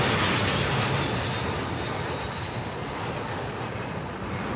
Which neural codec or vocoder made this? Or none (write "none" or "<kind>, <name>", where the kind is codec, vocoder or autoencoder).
none